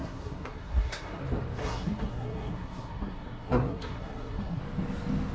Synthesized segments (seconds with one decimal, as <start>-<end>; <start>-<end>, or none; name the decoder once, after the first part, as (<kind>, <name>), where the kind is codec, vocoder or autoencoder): 0.0-1.2 (codec, SNAC); 1.6-4.6